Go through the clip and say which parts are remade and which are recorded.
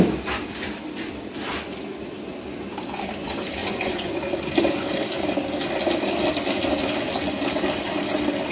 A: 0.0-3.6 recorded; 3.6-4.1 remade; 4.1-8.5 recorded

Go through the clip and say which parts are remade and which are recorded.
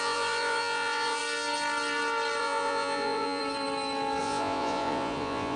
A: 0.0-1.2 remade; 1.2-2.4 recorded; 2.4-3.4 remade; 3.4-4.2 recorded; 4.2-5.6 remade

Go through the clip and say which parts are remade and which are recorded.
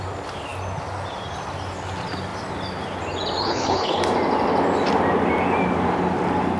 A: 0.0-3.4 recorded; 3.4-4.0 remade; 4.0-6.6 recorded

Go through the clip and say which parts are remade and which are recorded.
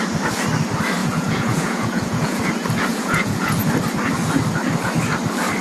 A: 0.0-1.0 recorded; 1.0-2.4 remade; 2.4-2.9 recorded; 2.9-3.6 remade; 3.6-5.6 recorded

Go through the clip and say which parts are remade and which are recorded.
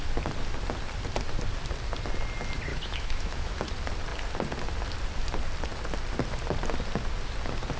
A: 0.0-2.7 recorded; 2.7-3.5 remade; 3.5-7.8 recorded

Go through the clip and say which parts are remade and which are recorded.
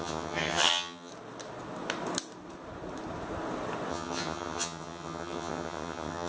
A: 0.0-1.1 remade; 1.1-3.9 recorded; 3.9-6.3 remade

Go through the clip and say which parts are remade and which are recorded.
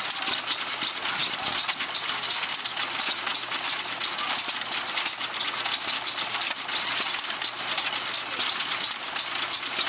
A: 0.0-9.9 recorded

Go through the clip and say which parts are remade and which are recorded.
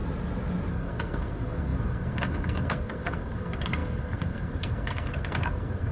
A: 0.0-0.7 recorded; 0.7-5.9 remade